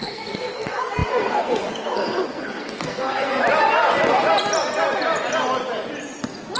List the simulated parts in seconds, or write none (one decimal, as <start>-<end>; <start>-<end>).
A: 0.0-3.3